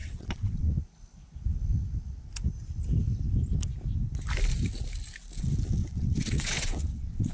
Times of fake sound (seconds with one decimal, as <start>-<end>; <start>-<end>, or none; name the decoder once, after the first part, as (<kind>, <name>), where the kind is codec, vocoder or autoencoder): 0.0-0.7 (vocoder, WaveNeXt); 5.8-7.3